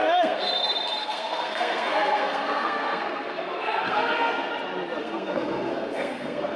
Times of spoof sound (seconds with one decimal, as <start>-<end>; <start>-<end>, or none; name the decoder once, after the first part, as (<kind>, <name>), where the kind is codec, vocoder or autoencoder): 0.0-0.5 (codec, SNAC); 1.0-4.5; 5.0-6.6

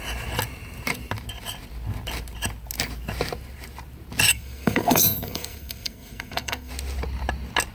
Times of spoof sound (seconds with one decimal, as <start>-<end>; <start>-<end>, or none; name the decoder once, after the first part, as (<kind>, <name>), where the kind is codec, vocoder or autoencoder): 4.3-6.7 (codec, SNAC)

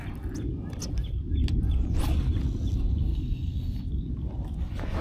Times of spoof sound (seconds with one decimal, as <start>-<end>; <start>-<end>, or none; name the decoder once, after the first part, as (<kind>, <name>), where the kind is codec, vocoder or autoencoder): 3.1-3.9 (codec, SNAC)